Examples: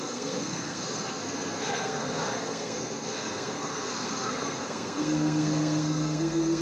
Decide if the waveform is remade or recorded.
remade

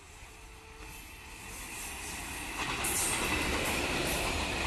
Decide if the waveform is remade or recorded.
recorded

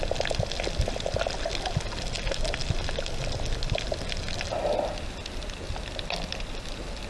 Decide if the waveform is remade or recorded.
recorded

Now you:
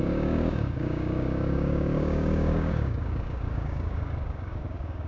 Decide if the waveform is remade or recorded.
remade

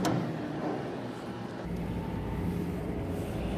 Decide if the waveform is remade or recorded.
remade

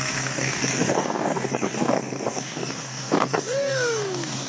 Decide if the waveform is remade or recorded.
remade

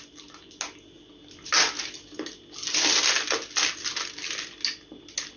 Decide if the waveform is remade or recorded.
recorded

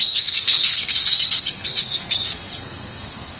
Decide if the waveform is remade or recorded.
remade